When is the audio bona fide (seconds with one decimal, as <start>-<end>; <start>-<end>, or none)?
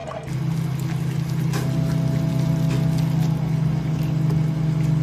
0.0-5.0